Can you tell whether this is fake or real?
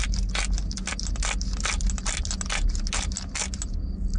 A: real